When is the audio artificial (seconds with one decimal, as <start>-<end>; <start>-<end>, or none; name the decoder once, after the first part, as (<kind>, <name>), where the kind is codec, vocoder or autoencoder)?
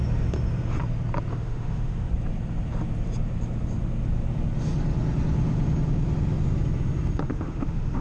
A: 1.3-2.1 (autoencoder, DAC-VAE); 7.3-8.0